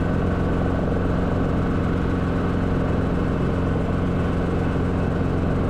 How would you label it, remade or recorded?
recorded